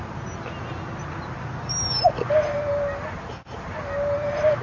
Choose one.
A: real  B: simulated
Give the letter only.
A